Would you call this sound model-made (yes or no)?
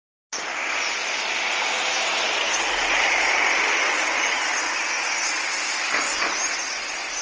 no